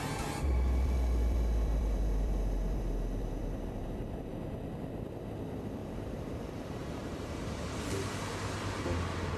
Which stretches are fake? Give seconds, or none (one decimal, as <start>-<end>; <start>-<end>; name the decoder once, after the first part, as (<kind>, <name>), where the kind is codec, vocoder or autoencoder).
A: 3.4-4.3 (vocoder, BigVGAN v2); 5.8-7.5